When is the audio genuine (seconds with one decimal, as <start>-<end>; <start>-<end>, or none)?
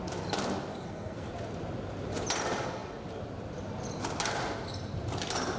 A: 0.0-0.7; 1.3-5.6